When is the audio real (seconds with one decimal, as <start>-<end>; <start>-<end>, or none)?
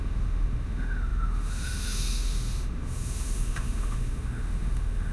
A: none